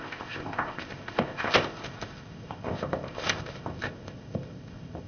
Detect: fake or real fake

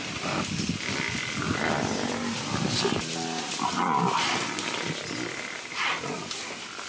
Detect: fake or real real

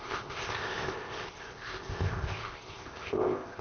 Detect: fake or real fake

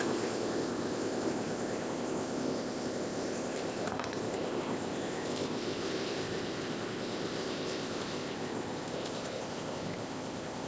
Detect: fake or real fake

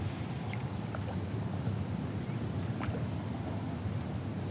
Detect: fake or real real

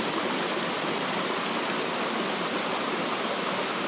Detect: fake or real real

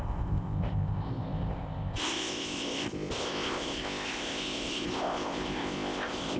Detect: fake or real fake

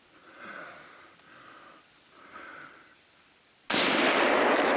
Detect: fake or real real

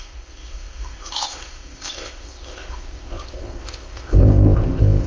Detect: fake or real fake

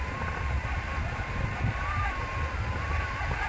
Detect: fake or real real